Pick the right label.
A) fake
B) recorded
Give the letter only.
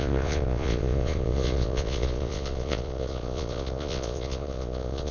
A